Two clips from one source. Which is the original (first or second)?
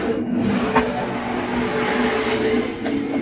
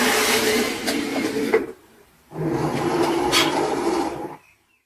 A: first